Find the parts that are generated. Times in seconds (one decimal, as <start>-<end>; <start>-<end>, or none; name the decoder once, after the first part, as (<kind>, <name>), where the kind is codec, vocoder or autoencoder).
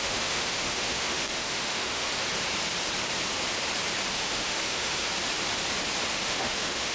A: 0.0-2.1 (autoencoder, DAC-VAE); 4.1-5.0; 6.1-6.9